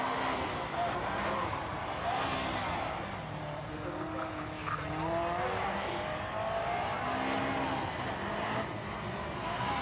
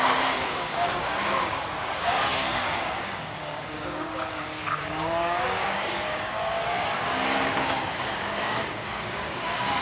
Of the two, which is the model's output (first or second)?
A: second